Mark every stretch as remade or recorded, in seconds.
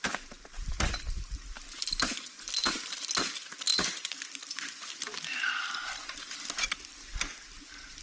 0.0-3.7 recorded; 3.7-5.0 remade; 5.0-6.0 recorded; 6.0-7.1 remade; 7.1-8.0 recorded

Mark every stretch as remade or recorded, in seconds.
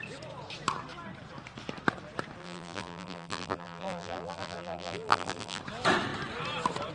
0.0-2.4 recorded; 2.4-5.6 remade; 5.6-6.9 recorded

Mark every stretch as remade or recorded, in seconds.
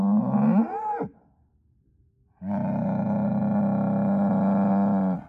0.0-5.3 recorded